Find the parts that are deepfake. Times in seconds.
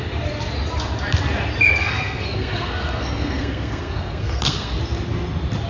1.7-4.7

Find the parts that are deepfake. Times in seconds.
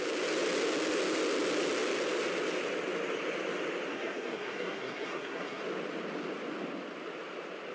3.9-5.6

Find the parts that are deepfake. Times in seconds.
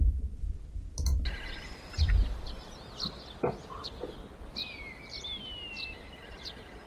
none